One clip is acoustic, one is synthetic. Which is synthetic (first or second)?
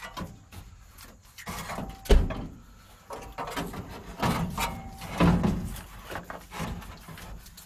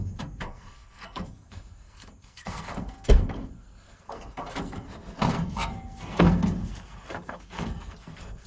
second